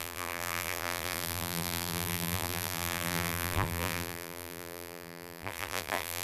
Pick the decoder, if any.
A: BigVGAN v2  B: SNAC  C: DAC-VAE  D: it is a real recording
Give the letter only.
A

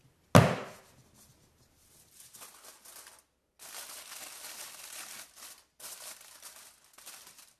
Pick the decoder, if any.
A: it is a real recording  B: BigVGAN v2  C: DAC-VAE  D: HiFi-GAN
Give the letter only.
A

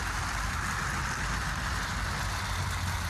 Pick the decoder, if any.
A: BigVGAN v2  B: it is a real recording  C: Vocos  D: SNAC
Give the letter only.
B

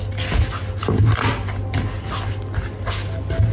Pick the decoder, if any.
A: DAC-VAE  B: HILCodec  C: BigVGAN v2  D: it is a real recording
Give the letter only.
D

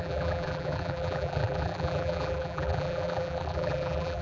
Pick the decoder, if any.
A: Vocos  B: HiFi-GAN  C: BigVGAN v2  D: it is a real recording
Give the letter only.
C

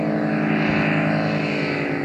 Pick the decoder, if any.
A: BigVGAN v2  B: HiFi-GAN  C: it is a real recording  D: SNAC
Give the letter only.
C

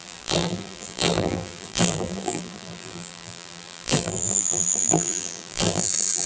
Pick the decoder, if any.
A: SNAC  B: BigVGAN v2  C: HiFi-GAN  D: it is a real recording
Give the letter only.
B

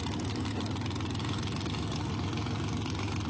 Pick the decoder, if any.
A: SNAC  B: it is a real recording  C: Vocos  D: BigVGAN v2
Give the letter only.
B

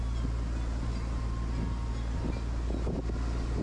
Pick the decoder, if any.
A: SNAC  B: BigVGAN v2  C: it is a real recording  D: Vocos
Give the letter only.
C